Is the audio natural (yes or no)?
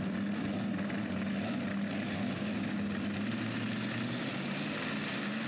yes